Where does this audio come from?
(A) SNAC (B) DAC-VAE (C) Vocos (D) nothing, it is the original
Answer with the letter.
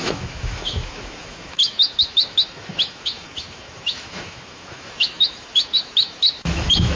B